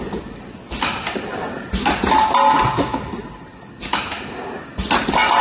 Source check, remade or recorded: recorded